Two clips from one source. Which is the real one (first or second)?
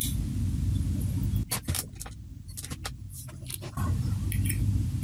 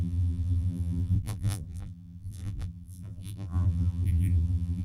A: first